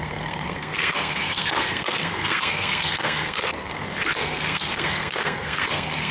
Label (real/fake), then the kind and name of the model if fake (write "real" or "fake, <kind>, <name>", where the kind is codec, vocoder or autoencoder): fake, codec, SNAC